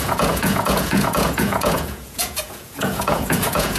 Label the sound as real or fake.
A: fake